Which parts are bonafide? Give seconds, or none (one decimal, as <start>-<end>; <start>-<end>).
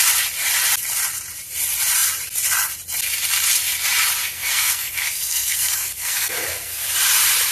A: 0.0-4.2; 6.9-7.5